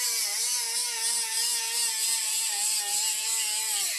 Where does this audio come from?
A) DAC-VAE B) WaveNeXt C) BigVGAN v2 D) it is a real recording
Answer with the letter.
C